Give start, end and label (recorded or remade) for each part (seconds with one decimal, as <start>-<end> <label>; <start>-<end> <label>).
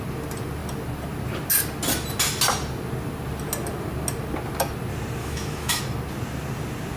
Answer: 0.0-5.2 recorded; 5.2-5.8 remade; 5.8-7.0 recorded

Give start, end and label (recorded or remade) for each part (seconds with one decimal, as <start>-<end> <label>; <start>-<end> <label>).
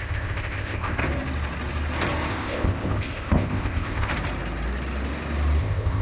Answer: 0.0-1.0 remade; 1.0-2.3 recorded; 2.3-4.1 remade; 4.1-5.6 recorded; 5.6-6.0 remade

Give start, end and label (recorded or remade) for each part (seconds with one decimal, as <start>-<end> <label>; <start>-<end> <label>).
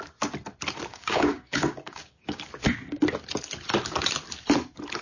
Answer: 0.0-0.9 recorded; 0.9-2.5 remade; 2.5-5.0 recorded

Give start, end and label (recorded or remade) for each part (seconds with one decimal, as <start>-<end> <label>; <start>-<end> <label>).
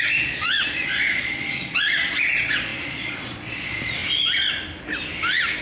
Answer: 0.0-4.0 remade; 4.0-5.6 recorded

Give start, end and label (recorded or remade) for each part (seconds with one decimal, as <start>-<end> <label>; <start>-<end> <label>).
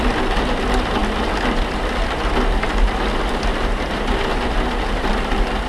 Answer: 0.0-3.5 recorded; 3.5-5.1 remade; 5.1-5.7 recorded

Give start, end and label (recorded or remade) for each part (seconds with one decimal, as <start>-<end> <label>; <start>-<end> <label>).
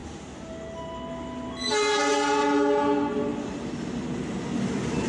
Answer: 0.0-5.1 recorded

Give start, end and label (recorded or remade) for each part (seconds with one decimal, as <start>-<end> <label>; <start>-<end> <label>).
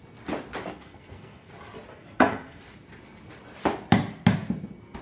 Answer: 0.0-0.7 recorded; 0.7-1.5 remade; 1.5-1.9 recorded; 1.9-2.6 remade; 2.6-5.0 recorded